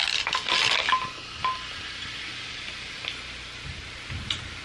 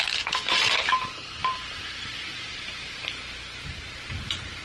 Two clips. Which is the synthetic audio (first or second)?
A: second